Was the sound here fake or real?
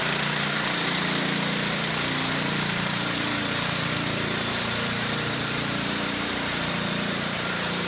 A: fake